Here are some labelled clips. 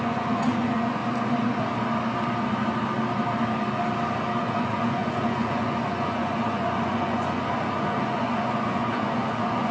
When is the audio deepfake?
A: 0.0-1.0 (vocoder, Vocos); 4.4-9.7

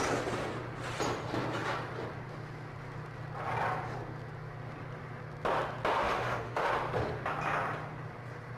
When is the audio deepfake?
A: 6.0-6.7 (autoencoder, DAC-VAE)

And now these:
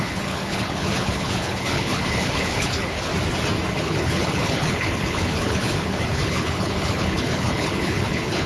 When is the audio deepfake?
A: 0.0-3.1 (codec, HILCodec); 3.7-8.5